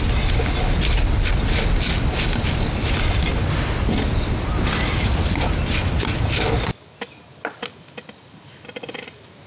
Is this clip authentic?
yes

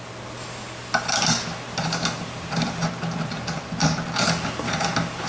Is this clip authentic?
yes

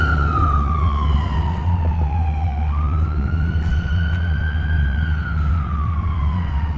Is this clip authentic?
no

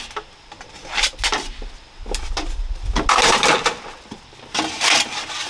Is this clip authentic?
yes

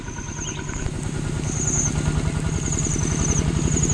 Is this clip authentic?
yes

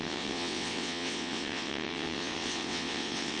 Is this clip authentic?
no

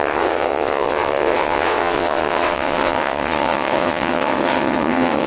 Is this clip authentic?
no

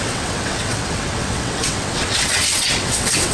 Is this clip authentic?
no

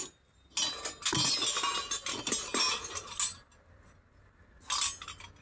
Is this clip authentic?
yes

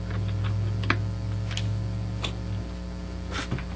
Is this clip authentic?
yes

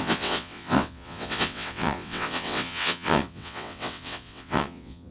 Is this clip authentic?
no